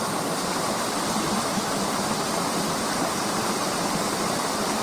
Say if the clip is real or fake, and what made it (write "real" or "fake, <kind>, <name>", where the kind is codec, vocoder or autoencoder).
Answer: real